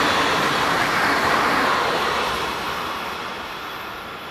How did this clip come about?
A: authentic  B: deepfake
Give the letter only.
A